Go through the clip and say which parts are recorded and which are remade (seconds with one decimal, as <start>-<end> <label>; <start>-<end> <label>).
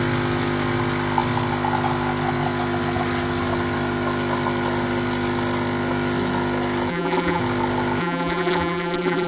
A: 0.0-6.9 recorded; 6.9-7.4 remade; 7.4-8.0 recorded; 8.0-9.3 remade